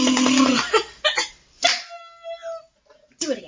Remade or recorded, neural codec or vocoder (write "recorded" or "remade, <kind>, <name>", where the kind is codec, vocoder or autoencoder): recorded